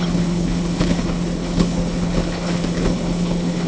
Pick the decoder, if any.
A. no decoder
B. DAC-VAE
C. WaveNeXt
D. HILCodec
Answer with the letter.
D